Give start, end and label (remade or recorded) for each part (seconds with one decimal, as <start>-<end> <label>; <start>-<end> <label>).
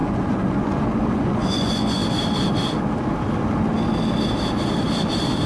0.0-2.0 remade; 2.0-5.5 recorded